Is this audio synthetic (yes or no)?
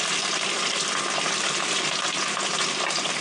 no